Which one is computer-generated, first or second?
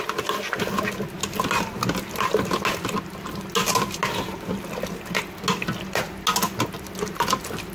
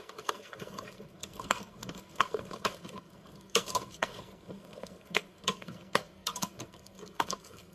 second